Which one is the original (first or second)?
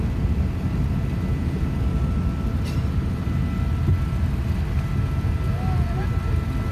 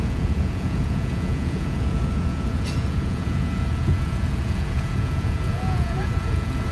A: first